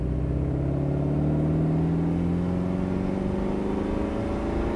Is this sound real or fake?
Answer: real